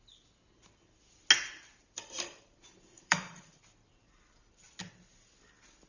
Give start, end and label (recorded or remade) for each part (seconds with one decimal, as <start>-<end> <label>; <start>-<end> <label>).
0.0-1.7 recorded; 1.7-4.8 remade; 4.8-5.9 recorded